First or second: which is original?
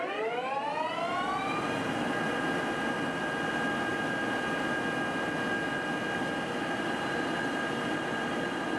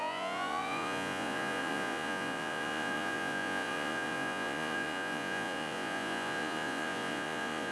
first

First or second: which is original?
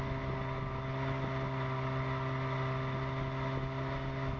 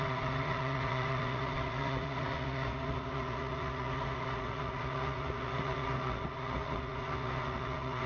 first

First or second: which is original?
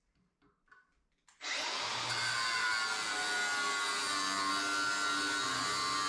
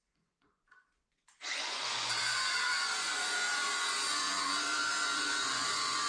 first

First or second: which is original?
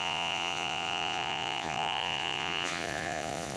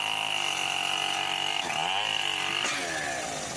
second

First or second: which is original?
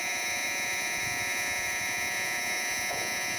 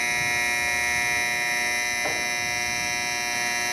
second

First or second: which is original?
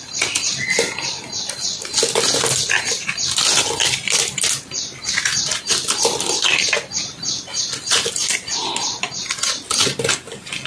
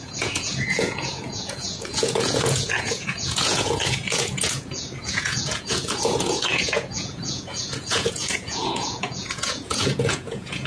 first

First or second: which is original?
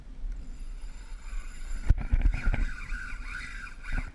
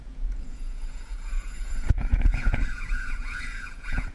first